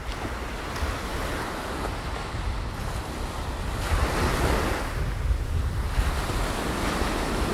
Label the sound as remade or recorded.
recorded